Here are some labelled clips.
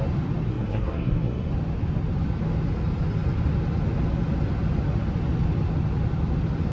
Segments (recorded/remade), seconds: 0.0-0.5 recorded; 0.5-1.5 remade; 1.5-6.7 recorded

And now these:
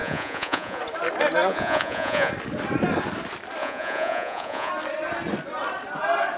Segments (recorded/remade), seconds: 0.0-0.8 remade; 0.8-1.5 recorded; 1.5-2.3 remade; 2.3-3.6 recorded; 3.6-4.7 remade; 4.7-6.4 recorded

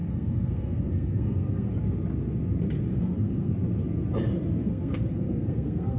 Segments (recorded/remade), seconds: 0.0-1.7 remade; 1.7-2.9 recorded; 2.9-3.5 remade; 3.5-4.6 recorded; 4.6-6.0 remade

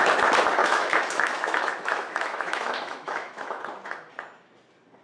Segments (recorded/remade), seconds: 0.0-0.6 recorded; 0.6-3.6 remade; 3.6-5.0 recorded

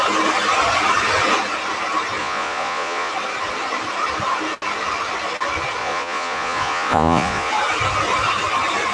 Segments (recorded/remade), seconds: 0.0-2.2 recorded; 2.2-3.1 remade; 3.1-5.8 recorded; 5.8-7.5 remade; 7.5-8.9 recorded

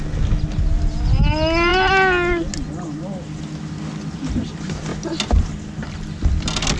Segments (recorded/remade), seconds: 0.0-6.8 recorded

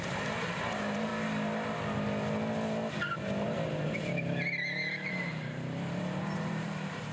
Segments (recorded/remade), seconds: 0.0-1.1 remade; 1.1-5.1 recorded; 5.1-7.1 remade

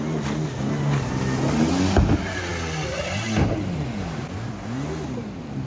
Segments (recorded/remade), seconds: 0.0-5.7 recorded